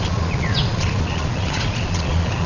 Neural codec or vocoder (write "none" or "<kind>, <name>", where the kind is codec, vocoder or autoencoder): vocoder, Vocos